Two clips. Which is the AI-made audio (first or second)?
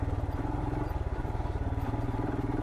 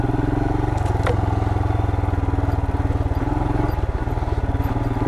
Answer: first